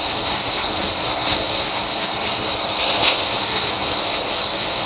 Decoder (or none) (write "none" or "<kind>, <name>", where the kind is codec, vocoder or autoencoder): codec, SNAC